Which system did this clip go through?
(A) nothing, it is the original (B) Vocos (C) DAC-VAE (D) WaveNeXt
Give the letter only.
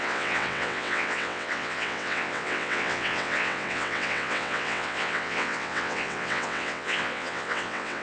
D